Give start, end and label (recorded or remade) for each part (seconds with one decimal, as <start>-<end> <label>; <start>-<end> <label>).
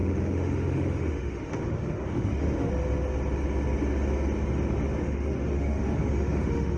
0.0-2.7 remade; 2.7-5.0 recorded; 5.0-6.8 remade